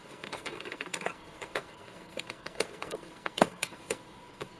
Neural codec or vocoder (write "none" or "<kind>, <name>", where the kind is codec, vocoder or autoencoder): codec, SNAC